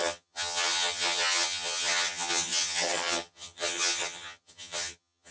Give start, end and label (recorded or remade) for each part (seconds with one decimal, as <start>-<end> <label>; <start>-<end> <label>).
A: 0.0-5.3 remade